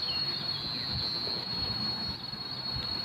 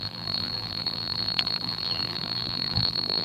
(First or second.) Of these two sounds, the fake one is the second